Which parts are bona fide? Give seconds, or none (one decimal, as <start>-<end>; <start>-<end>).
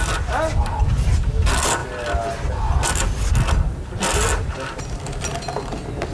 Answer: 0.0-6.1